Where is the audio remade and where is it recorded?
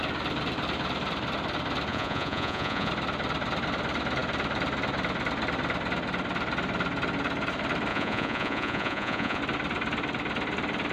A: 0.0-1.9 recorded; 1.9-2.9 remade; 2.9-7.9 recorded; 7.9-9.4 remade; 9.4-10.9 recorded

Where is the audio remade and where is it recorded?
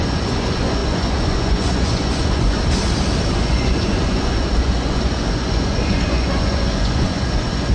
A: 0.0-2.6 remade; 2.6-3.3 recorded; 3.3-7.7 remade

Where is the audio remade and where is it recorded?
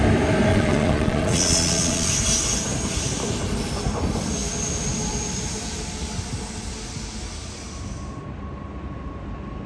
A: 0.0-0.5 recorded; 0.5-2.1 remade; 2.1-9.7 recorded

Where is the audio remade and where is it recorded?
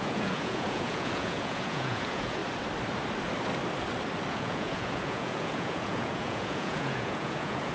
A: 0.0-2.4 remade; 2.4-4.3 recorded; 4.3-7.7 remade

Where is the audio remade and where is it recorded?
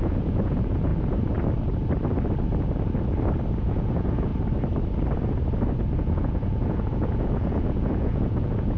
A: 0.0-0.9 remade; 0.9-3.6 recorded; 3.6-4.3 remade; 4.3-6.0 recorded; 6.0-8.8 remade